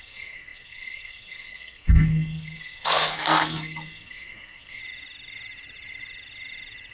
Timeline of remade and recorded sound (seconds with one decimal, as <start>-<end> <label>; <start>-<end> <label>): 0.0-4.8 remade; 4.8-6.9 recorded